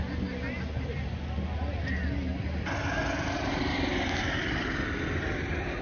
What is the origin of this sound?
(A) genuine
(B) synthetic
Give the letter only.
A